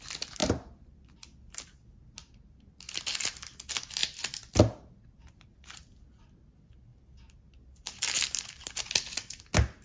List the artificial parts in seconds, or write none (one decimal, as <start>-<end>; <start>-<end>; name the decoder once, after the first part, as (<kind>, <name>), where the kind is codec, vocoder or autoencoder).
0.4-0.9 (vocoder, BigVGAN v2)